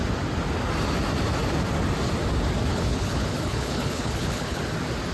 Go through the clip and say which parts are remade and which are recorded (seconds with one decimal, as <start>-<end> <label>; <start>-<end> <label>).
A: 0.0-2.7 recorded; 2.7-4.6 remade; 4.6-5.1 recorded